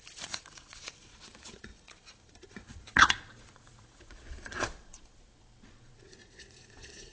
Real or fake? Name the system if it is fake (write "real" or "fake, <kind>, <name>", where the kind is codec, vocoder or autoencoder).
fake, vocoder, Vocos